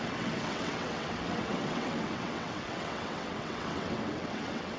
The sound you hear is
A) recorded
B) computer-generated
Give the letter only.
B